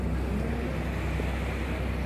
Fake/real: real